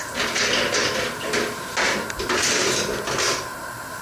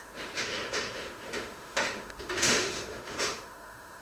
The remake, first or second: second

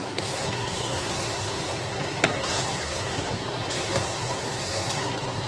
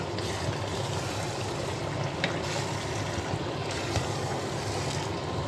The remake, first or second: first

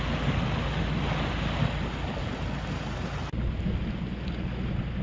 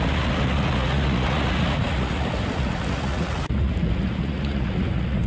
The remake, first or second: second